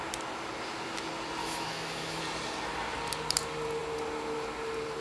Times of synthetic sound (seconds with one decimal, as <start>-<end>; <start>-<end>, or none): 1.4-2.2